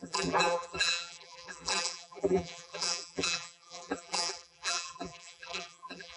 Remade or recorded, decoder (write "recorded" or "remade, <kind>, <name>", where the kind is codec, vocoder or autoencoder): remade, vocoder, BigVGAN v2